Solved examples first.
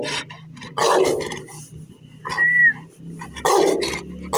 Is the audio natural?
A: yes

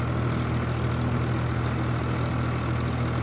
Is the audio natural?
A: yes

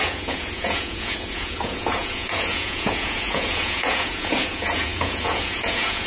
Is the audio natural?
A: no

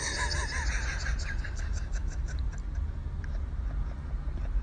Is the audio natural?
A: yes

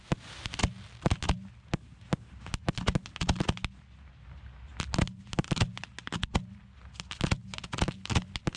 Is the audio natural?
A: yes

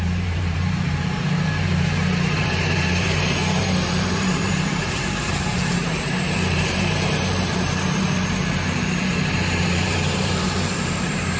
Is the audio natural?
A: no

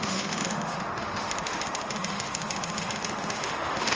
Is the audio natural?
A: no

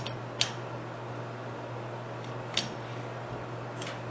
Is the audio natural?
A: yes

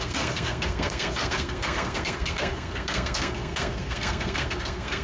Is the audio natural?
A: no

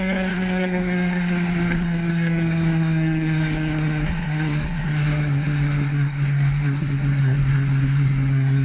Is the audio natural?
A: no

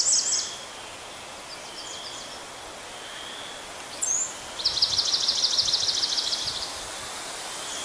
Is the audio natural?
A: yes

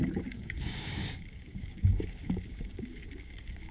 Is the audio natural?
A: no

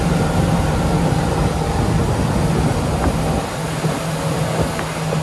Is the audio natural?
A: yes